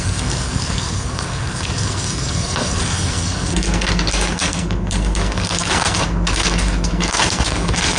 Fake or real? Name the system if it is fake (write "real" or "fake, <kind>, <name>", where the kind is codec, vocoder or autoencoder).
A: fake, codec, SNAC